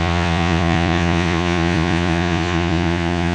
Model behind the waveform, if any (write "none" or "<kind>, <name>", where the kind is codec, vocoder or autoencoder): vocoder, Vocos